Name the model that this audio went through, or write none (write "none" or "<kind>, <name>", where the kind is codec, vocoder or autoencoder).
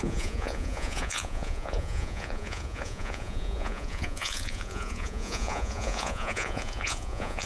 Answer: vocoder, Vocos